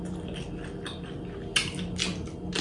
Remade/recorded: recorded